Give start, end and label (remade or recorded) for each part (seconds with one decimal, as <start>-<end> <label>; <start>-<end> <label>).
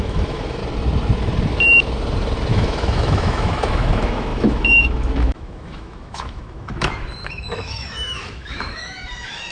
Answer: 0.0-0.6 remade; 0.6-2.5 recorded; 2.5-9.5 remade